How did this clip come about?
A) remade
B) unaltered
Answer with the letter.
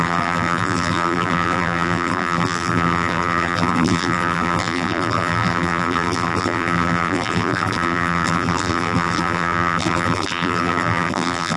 A